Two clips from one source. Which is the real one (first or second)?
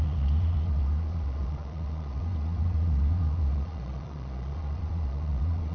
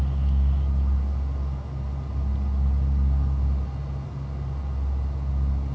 second